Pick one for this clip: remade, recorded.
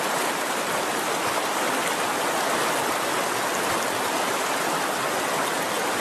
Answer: recorded